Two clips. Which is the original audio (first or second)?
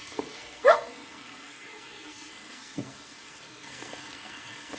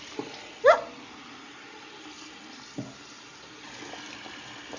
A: second